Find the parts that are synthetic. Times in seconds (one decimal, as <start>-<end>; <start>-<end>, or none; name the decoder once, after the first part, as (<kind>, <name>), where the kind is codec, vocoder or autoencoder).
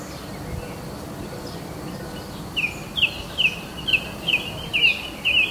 none